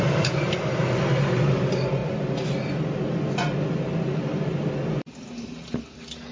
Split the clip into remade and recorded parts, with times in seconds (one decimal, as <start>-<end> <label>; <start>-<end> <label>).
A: 0.0-6.3 recorded